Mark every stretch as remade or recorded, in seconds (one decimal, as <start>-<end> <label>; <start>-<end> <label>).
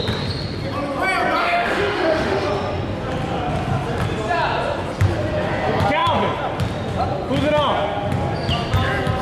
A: 0.0-1.4 recorded; 1.4-2.5 remade; 2.5-9.2 recorded